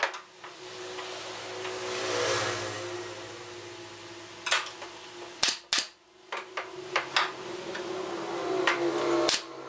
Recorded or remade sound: recorded